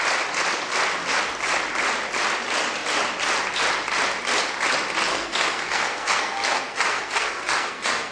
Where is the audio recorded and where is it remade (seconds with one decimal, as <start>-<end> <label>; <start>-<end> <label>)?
0.0-5.1 recorded; 5.1-8.1 remade